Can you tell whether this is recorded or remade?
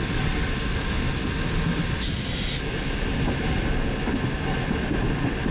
recorded